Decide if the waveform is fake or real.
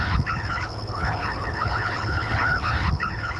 fake